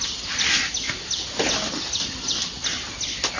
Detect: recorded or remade recorded